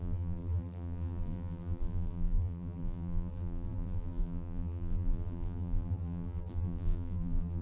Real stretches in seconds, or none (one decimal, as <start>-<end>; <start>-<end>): none